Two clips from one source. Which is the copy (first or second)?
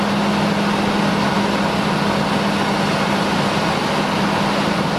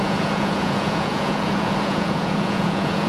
second